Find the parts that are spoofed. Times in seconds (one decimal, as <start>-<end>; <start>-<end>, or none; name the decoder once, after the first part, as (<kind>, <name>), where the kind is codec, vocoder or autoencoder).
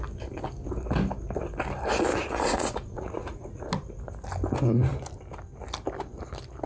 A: 2.2-3.7 (vocoder, Vocos)